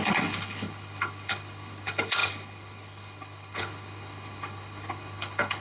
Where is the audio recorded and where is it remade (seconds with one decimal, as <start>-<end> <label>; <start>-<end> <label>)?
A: 0.0-5.6 remade

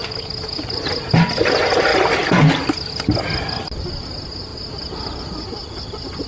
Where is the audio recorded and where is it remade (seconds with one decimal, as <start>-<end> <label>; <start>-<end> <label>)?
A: 0.0-6.3 recorded

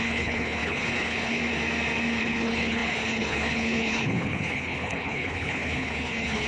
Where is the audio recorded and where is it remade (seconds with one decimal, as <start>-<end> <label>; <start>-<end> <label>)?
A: 0.0-1.4 remade; 1.4-2.2 recorded; 2.2-6.5 remade

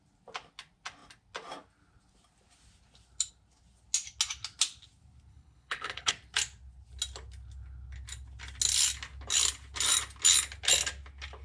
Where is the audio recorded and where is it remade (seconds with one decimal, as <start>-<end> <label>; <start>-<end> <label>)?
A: 0.0-5.3 recorded; 5.3-6.1 remade; 6.1-11.4 recorded

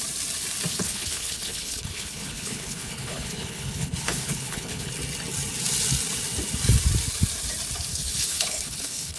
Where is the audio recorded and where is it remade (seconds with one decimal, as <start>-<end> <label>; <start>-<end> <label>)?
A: 0.0-0.7 recorded; 0.7-4.9 remade; 4.9-7.9 recorded; 7.9-9.2 remade

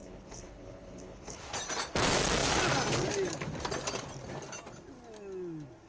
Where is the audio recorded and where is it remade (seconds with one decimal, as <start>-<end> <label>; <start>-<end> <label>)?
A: 0.0-1.4 remade; 1.4-5.9 recorded

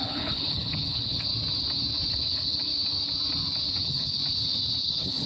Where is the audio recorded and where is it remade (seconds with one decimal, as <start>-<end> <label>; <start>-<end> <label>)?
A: 0.0-1.3 remade; 1.3-2.1 recorded; 2.1-2.7 remade; 2.7-3.7 recorded; 3.7-4.2 remade; 4.2-4.8 recorded; 4.8-5.3 remade